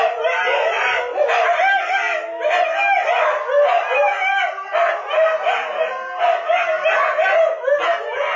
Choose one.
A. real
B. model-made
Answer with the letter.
A